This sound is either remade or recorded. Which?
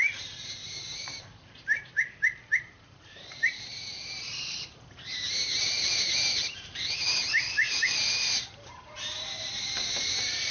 remade